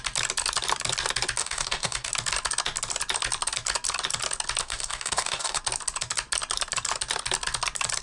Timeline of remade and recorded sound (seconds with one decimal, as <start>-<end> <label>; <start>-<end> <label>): 0.0-1.4 recorded; 1.4-2.1 remade; 2.1-4.6 recorded; 4.6-5.6 remade; 5.6-8.0 recorded